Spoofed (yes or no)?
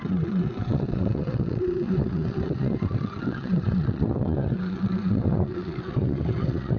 yes